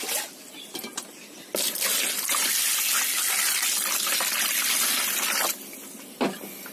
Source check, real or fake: real